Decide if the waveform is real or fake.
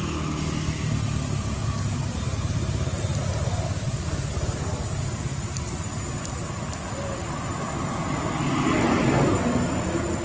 real